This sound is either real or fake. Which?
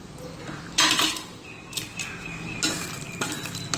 real